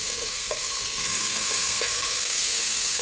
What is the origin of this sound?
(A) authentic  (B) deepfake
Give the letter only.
B